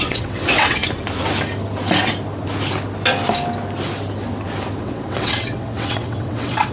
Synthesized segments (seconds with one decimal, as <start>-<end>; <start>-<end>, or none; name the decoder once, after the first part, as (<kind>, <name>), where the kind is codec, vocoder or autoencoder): 0.0-0.8 (vocoder, WaveNeXt); 4.8-6.7